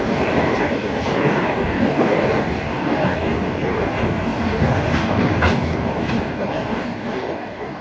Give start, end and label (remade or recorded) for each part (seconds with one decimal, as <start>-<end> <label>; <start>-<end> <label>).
0.0-7.8 remade